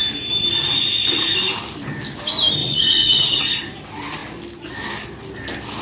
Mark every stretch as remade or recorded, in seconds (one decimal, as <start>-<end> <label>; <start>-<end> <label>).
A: 0.0-2.6 recorded; 2.6-3.2 remade; 3.2-5.8 recorded